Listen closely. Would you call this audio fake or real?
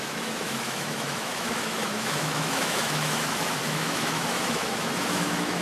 fake